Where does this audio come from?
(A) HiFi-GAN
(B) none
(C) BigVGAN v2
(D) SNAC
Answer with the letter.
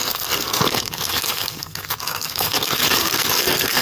D